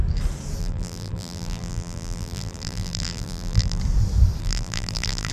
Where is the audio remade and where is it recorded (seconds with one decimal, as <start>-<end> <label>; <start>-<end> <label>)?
0.0-0.6 recorded; 0.6-3.8 remade; 3.8-4.4 recorded; 4.4-5.3 remade